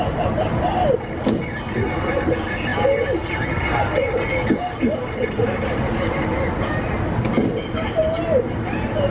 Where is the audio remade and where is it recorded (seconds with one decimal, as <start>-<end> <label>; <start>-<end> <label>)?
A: 0.0-9.1 recorded